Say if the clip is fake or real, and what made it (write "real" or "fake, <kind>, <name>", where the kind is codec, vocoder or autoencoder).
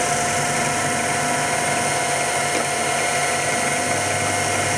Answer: real